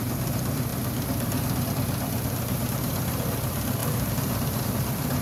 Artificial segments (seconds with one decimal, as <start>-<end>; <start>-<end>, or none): 0.0-5.2

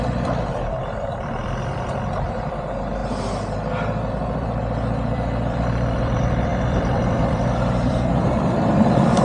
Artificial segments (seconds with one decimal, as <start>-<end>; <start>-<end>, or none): 0.0-3.0; 4.1-9.2